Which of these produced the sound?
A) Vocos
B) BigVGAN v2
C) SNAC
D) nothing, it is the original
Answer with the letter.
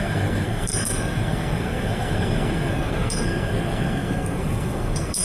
C